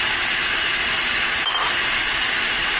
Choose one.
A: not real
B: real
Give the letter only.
A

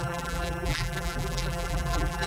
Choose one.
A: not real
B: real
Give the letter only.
A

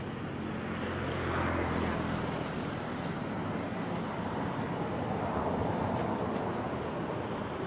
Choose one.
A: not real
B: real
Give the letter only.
B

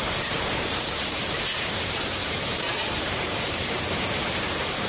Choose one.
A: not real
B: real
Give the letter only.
A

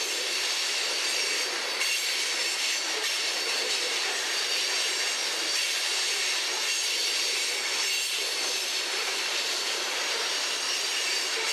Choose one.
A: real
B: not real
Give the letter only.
B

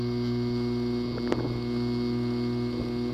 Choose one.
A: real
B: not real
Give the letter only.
A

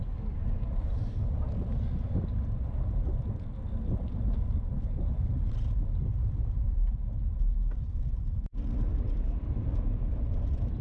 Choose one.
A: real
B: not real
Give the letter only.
B